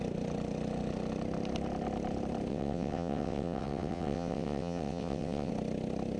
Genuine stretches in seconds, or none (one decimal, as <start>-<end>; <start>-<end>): 0.0-2.5; 5.5-6.2